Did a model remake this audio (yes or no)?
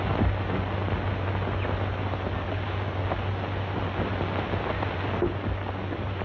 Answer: no